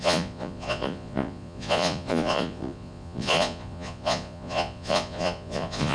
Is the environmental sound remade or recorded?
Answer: remade